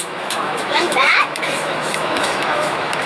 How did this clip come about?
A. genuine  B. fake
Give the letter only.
B